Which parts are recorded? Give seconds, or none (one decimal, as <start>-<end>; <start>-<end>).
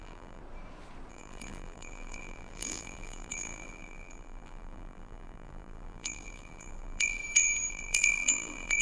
0.4-1.1; 7.2-7.7